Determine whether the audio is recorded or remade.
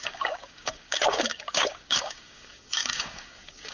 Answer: remade